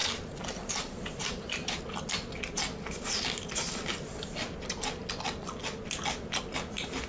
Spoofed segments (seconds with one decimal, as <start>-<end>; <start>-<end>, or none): 0.0-1.8